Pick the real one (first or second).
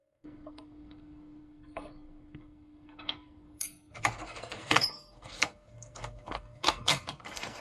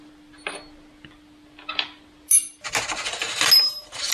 second